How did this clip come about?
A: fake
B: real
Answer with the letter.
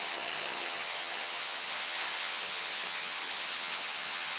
A